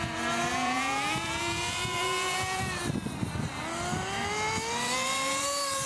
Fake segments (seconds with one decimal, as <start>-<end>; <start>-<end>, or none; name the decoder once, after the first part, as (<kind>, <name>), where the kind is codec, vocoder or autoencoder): 0.5-2.6 (vocoder, Vocos)